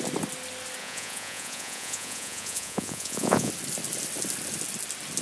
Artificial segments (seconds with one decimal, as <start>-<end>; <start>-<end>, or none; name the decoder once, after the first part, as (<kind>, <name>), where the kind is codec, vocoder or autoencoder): 0.8-3.5 (vocoder, Vocos)